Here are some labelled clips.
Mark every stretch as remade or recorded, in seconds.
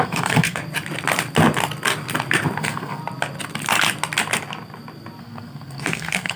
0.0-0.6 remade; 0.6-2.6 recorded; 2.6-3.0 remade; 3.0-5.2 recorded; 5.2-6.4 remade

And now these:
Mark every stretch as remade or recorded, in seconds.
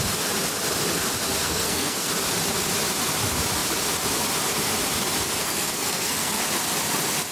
0.0-1.4 recorded; 1.4-2.1 remade; 2.1-5.4 recorded; 5.4-6.4 remade; 6.4-7.3 recorded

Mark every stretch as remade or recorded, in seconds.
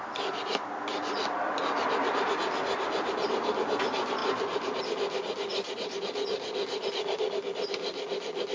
0.0-8.5 recorded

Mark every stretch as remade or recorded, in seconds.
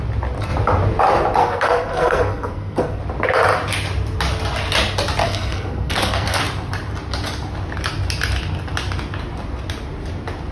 0.0-1.4 recorded; 1.4-3.0 remade; 3.0-5.2 recorded; 5.2-6.4 remade; 6.4-10.5 recorded